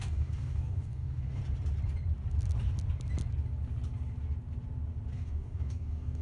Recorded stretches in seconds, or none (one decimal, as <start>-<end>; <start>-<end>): 1.4-5.1